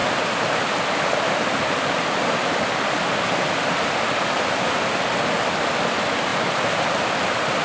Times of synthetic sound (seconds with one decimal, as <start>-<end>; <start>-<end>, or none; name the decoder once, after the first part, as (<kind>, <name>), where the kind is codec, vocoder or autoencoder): 6.3-7.1 (vocoder, BigVGAN v2)